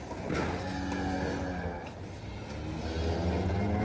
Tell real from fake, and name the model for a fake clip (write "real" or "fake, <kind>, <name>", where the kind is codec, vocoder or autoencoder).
real